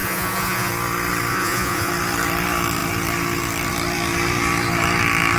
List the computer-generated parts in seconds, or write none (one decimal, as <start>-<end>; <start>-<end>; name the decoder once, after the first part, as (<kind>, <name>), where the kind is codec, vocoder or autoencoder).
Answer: 0.0-0.7 (vocoder, Vocos); 1.3-1.9

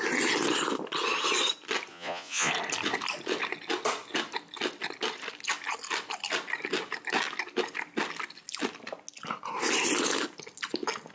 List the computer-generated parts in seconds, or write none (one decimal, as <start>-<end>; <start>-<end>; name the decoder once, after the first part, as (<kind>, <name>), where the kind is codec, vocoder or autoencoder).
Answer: 1.9-2.5 (vocoder, Vocos)

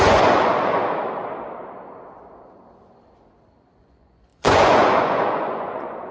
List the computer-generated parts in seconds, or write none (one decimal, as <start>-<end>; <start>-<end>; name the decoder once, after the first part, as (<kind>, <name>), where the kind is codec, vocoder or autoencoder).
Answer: 0.0-0.8 (vocoder, Vocos); 3.8-6.1

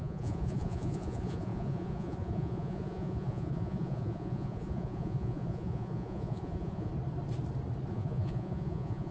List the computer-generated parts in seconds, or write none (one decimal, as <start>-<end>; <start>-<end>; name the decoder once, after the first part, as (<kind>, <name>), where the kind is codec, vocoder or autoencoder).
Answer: 0.0-6.9 (vocoder, Vocos); 7.9-9.1

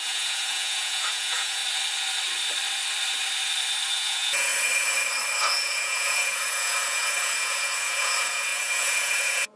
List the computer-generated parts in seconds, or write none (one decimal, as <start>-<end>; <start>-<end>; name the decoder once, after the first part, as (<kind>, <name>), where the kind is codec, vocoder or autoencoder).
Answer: 0.0-1.6 (vocoder, Vocos); 3.9-4.5; 5.4-9.6

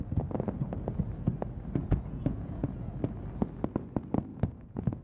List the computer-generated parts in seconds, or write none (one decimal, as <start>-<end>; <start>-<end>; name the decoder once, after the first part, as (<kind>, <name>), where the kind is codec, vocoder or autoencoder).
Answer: 1.8-2.9 (vocoder, Vocos); 4.3-5.0

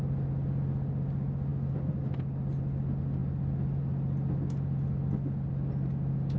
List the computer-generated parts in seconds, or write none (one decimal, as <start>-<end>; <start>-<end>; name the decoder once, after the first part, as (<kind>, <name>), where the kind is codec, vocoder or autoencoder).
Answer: none

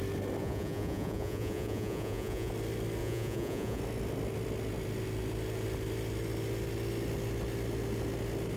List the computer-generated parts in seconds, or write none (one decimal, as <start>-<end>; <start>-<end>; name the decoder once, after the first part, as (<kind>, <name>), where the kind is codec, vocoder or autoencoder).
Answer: 0.4-2.5 (vocoder, Vocos); 3.0-3.8